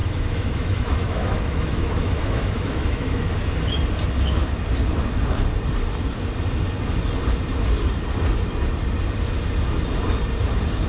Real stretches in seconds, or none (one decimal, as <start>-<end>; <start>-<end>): 3.3-10.9